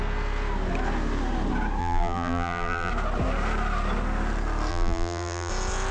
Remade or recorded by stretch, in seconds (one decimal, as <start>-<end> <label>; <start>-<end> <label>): 0.0-1.8 recorded; 1.8-2.9 remade; 2.9-4.7 recorded; 4.7-5.5 remade; 5.5-5.9 recorded